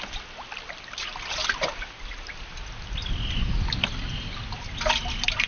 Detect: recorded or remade recorded